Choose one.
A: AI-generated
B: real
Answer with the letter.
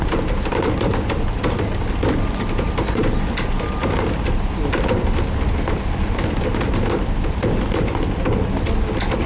B